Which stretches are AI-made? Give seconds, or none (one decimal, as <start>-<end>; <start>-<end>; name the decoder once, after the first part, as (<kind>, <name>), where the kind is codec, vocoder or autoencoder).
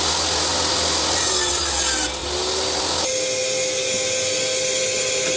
0.5-1.6 (vocoder, BigVGAN v2)